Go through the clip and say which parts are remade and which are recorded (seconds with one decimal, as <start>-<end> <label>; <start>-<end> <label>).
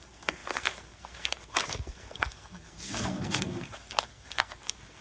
0.0-5.0 remade